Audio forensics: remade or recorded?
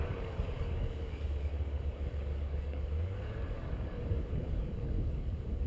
remade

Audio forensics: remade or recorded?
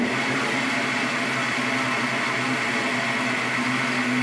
recorded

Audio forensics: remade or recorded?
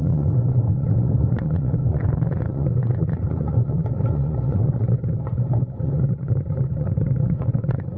remade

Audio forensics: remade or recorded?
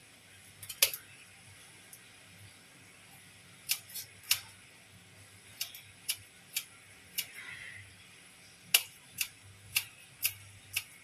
recorded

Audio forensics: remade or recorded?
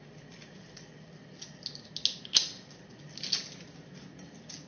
recorded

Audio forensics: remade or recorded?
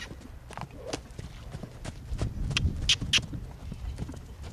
recorded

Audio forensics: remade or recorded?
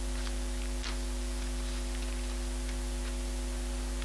recorded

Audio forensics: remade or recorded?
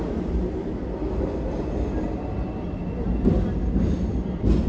recorded